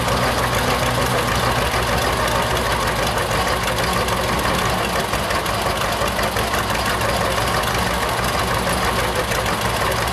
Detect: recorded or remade recorded